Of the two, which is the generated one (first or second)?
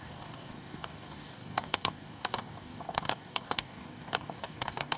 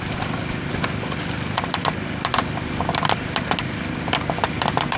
first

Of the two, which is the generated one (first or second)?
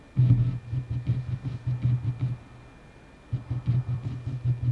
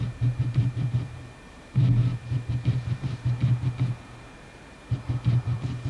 second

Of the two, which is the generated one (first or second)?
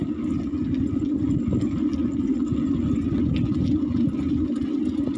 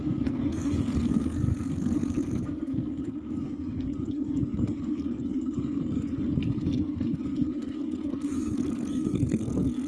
second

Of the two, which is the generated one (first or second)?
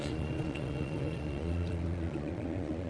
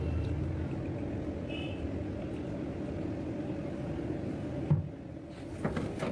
first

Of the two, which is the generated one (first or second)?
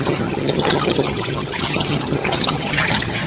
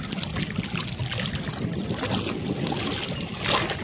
first